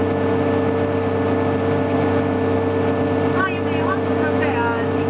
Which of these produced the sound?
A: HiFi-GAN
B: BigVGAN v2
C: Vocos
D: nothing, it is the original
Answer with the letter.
D